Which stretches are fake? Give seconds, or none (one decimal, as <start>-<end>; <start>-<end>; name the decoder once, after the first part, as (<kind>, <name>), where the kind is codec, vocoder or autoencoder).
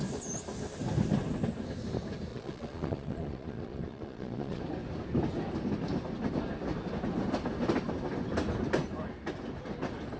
2.3-4.6 (vocoder, Vocos)